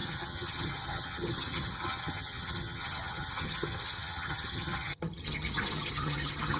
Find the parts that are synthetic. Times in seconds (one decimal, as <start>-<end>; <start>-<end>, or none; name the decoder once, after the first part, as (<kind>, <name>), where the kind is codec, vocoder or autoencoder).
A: 0.0-6.6 (vocoder, HiFi-GAN)